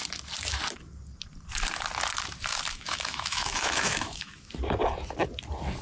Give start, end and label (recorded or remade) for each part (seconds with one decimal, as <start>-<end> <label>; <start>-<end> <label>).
0.0-2.5 recorded; 2.5-4.5 remade; 4.5-5.8 recorded